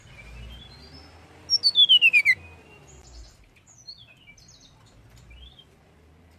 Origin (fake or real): real